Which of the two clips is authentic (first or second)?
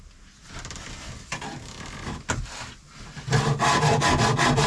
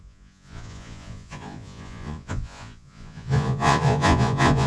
first